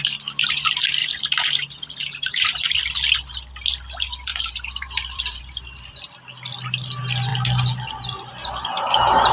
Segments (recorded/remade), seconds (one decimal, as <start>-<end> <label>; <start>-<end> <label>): 0.0-1.0 recorded; 1.0-2.8 remade; 2.8-4.3 recorded; 4.3-6.0 remade; 6.0-8.4 recorded; 8.4-9.3 remade